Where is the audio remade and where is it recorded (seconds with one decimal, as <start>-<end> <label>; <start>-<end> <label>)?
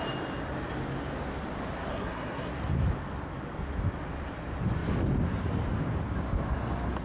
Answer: 0.0-1.9 recorded; 1.9-2.5 remade; 2.5-7.0 recorded